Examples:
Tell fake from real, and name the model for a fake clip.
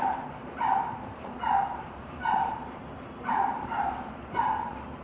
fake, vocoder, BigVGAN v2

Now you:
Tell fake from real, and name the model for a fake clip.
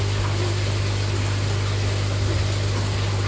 real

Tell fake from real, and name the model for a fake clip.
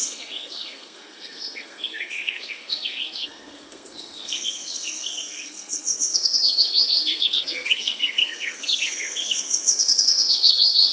fake, codec, SNAC